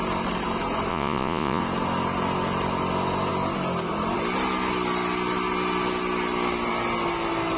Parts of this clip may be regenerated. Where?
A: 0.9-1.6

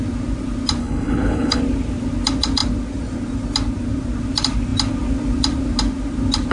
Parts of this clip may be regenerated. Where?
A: 0.8-1.6

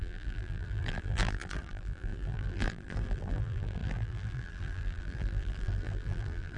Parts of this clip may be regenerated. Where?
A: 0.0-6.6

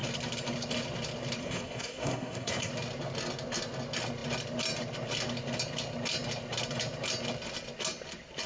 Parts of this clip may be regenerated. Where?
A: 1.4-2.7

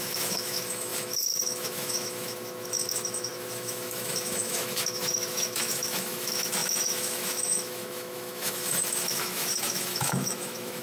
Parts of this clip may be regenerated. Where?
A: 0.0-10.8